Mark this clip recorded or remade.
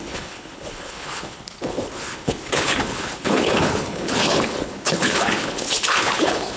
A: remade